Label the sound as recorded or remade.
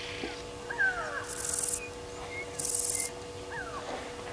recorded